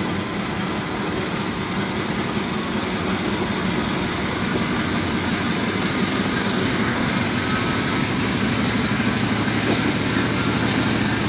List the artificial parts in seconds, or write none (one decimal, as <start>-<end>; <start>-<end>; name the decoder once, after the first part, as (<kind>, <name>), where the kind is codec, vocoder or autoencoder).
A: 6.4-7.1 (codec, DAC)